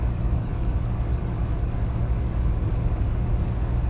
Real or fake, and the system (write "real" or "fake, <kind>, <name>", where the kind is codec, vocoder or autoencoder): fake, codec, DAC